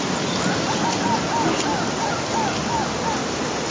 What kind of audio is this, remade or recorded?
recorded